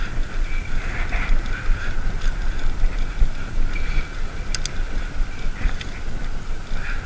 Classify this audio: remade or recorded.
recorded